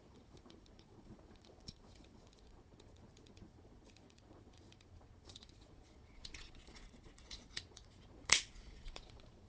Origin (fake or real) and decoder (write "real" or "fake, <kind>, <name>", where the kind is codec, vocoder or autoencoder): fake, vocoder, Vocos